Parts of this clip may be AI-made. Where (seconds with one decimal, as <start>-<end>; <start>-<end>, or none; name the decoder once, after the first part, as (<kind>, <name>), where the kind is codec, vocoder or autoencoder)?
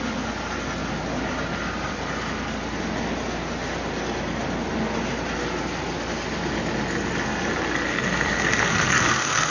7.9-9.5 (codec, SNAC)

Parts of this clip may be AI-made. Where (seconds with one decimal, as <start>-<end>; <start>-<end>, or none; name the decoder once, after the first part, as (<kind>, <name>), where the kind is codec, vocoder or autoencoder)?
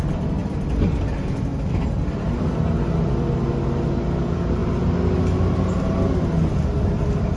none